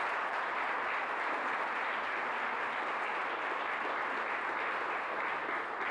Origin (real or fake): real